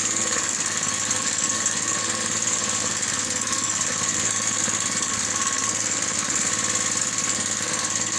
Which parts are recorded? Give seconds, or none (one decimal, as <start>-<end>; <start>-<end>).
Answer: 6.5-7.0